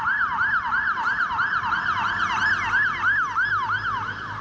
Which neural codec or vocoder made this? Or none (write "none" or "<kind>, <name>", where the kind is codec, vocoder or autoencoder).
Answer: none